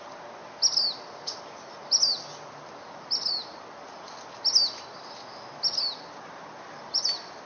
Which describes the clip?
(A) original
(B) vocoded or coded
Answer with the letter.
A